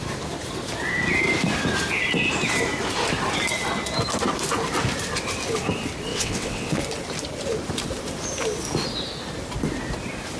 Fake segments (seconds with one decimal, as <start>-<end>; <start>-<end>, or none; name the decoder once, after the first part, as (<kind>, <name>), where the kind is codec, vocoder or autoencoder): 6.1-6.8 (vocoder, WaveNeXt)